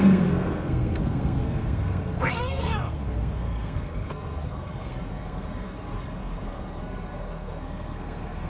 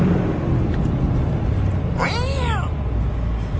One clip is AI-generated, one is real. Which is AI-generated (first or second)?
first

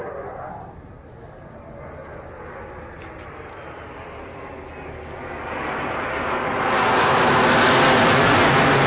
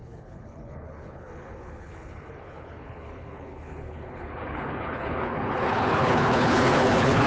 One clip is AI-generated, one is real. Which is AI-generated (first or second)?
second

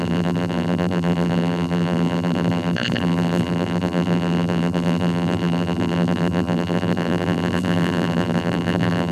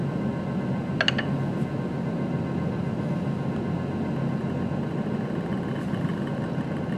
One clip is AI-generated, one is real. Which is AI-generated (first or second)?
first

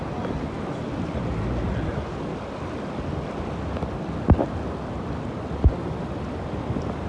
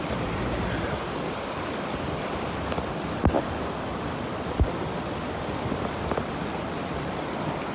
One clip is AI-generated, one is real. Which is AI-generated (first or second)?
second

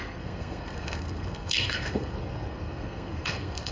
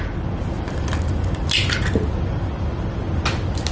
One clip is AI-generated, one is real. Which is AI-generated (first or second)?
first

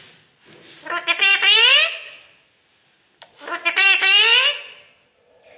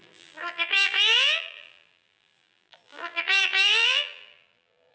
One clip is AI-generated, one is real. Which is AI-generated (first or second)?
second